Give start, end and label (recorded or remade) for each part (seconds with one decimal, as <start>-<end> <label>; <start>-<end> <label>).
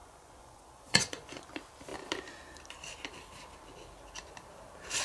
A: 0.0-1.5 remade; 1.5-5.0 recorded